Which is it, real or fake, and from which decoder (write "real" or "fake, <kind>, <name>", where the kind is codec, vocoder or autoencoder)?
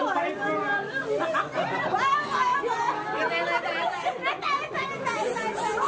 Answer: real